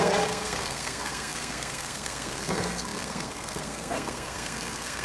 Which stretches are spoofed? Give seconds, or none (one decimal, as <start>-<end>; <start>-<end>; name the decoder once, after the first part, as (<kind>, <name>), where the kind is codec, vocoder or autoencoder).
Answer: 0.0-5.0 (codec, SNAC)